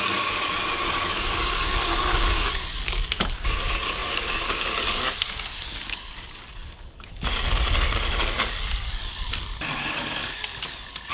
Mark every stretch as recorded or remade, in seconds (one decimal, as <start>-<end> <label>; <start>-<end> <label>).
0.0-9.0 remade; 9.0-9.9 recorded; 9.9-10.5 remade; 10.5-11.1 recorded